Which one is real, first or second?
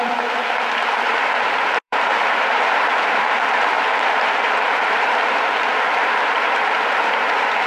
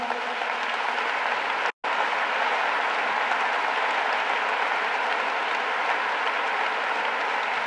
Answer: second